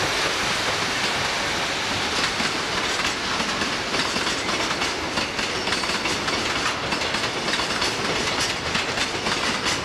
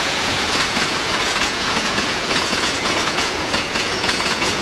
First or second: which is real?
first